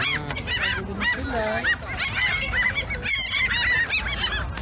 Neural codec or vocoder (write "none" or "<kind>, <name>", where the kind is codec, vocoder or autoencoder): none